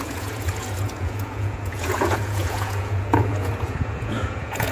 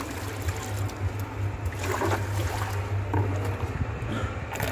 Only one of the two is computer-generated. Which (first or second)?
first